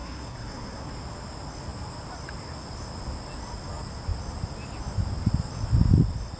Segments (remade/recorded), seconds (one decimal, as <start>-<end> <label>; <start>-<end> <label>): 0.0-0.9 remade; 0.9-6.4 recorded